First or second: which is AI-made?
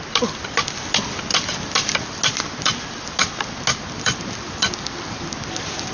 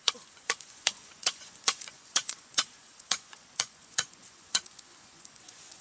second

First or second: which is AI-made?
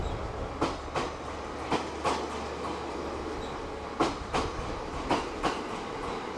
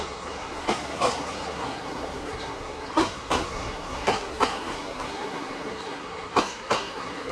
second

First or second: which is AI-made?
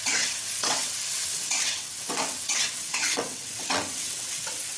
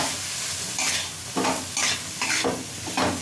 first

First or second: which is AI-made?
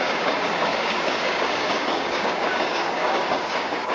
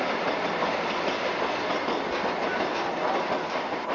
first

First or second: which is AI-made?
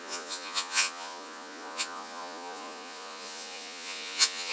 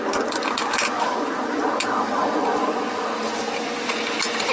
first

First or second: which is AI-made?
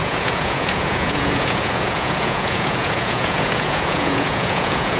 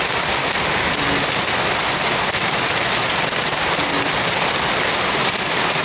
first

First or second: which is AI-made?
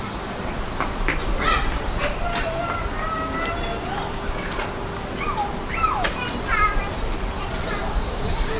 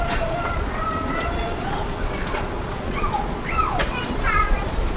second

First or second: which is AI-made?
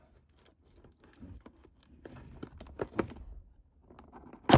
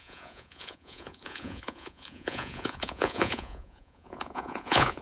second